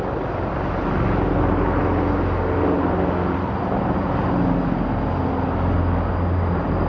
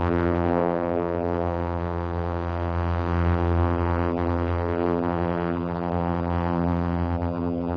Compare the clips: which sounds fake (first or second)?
second